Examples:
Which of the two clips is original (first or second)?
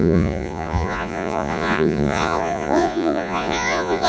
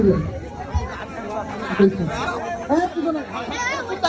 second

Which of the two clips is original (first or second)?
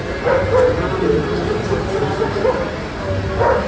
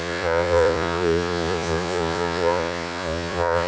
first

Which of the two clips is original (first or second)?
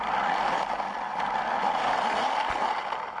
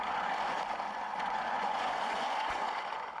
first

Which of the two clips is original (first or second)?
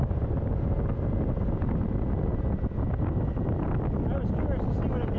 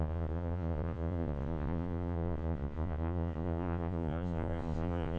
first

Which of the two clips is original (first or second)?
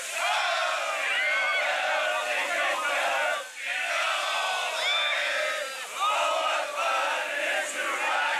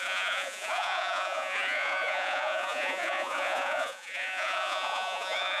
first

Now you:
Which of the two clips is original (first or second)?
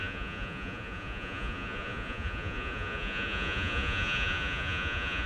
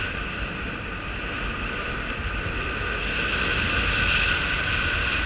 second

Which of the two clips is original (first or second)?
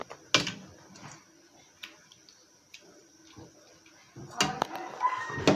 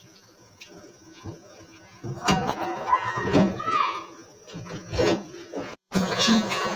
first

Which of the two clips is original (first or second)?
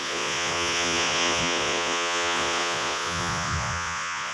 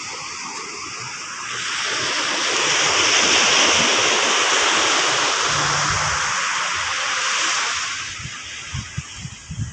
second